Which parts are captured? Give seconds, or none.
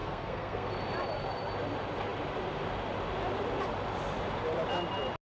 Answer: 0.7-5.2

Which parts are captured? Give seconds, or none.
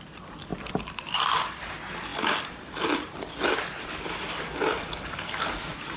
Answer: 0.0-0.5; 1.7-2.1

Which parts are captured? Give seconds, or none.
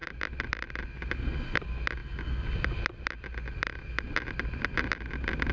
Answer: 0.0-5.5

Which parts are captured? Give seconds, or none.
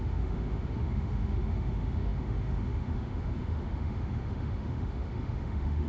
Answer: none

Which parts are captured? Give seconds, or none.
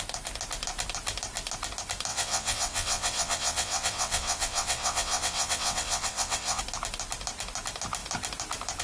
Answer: 0.0-2.1; 6.6-8.8